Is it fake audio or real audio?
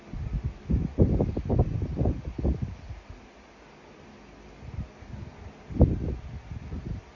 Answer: real